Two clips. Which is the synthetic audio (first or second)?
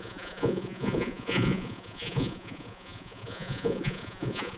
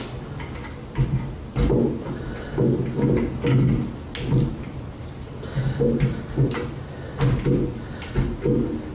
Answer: first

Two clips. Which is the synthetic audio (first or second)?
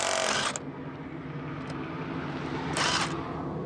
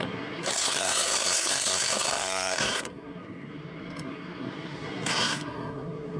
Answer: second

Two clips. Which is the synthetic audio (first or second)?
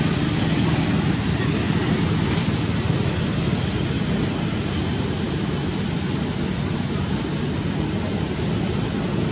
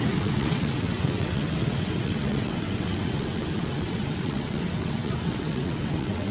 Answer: second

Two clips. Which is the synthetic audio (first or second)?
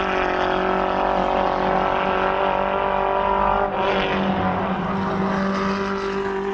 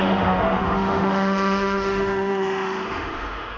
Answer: second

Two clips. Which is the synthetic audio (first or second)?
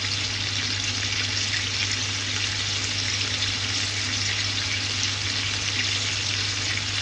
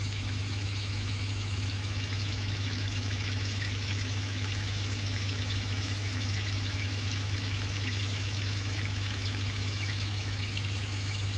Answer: second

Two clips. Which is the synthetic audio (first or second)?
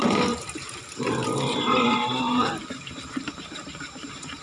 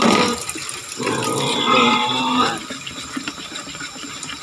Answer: first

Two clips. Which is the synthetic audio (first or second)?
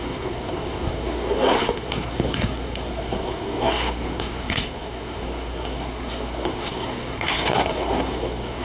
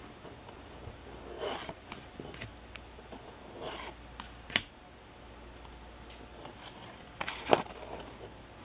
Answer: first